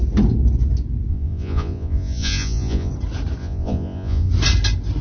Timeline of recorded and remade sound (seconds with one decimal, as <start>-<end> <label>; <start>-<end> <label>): 0.0-1.1 recorded; 1.1-2.9 remade; 2.9-3.4 recorded; 3.4-4.3 remade; 4.3-5.0 recorded

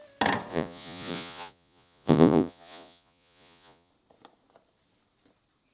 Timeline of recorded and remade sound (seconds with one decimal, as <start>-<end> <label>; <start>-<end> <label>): 0.0-0.5 recorded; 0.5-3.9 remade; 3.9-5.7 recorded